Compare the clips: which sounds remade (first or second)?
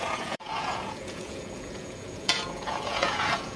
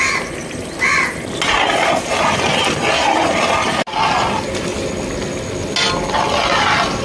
first